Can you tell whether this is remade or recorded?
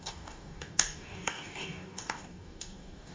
remade